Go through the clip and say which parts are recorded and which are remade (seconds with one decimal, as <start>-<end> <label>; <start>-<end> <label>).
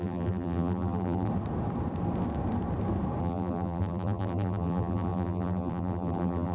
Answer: 0.0-1.3 remade; 1.3-3.2 recorded; 3.2-6.5 remade